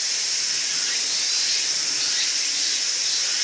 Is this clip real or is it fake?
real